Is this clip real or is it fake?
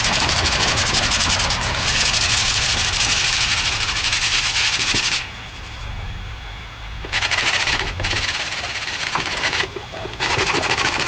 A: real